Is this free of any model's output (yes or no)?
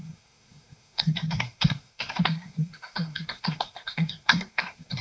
no